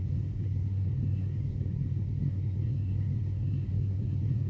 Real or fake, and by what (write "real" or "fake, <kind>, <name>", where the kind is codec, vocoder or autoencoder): fake, codec, SNAC